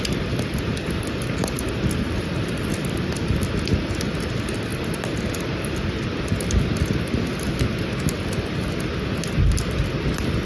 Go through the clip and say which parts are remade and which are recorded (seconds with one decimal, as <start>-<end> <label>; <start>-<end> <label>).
0.0-10.4 recorded